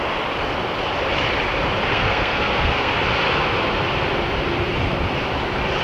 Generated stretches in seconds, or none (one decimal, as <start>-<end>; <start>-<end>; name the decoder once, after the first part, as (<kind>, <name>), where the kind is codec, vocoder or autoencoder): 1.9-2.9 (codec, SNAC)